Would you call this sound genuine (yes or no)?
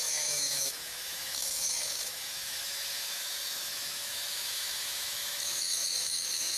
no